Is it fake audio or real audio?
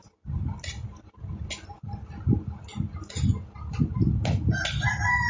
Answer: real